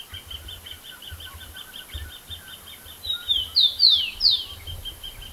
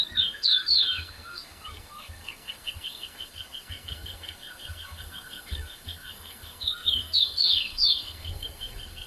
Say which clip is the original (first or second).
first